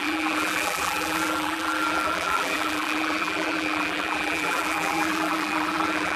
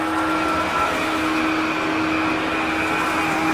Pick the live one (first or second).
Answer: second